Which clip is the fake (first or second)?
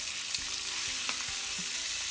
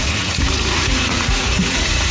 second